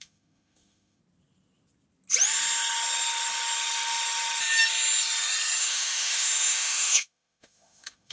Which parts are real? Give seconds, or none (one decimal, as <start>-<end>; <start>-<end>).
1.0-5.6